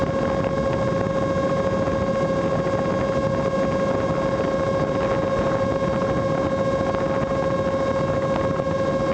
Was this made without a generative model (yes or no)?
yes